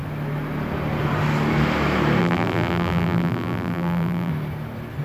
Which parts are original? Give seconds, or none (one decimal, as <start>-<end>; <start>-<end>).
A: 0.0-2.2; 4.3-5.0